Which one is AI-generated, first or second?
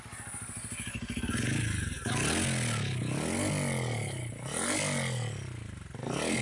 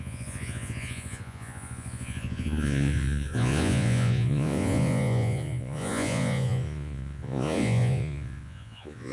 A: second